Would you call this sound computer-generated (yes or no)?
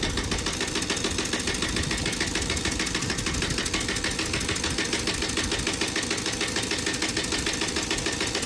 no